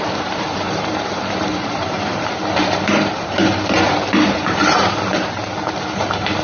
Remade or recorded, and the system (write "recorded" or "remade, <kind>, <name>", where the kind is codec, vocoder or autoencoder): remade, vocoder, BigVGAN v2